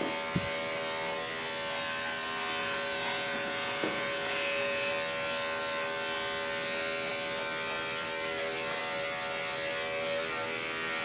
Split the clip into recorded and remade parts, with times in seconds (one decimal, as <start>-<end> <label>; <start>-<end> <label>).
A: 0.0-2.6 recorded; 2.6-4.9 remade; 4.9-11.0 recorded